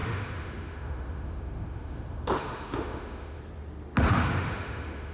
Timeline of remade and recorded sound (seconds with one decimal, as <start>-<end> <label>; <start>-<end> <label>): 0.0-3.4 remade; 3.4-4.1 recorded; 4.1-5.1 remade